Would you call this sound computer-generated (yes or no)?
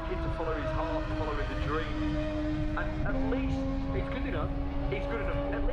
no